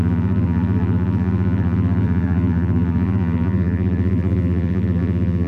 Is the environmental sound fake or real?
fake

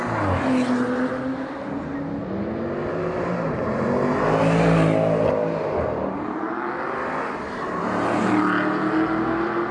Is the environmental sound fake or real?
real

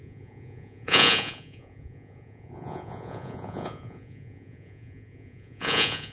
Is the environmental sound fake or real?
fake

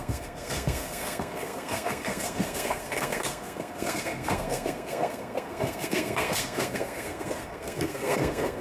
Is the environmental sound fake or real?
fake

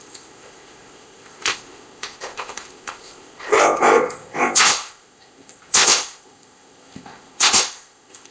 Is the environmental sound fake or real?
fake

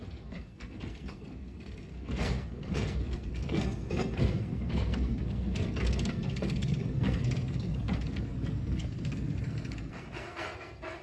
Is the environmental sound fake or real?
fake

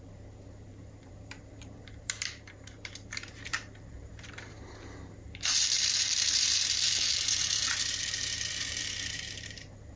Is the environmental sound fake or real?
fake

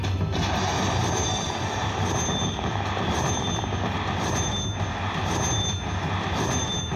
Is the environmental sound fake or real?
real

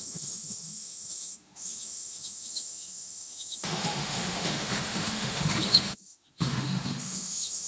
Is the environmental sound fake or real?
fake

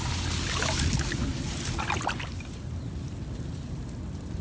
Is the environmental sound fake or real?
real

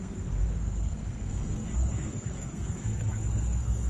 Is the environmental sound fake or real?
fake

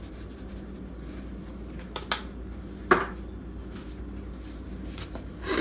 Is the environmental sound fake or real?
real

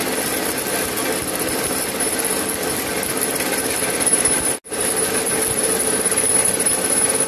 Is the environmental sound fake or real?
real